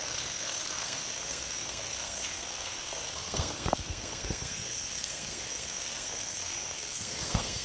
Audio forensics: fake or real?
fake